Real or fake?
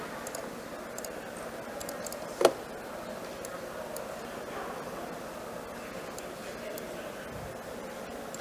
real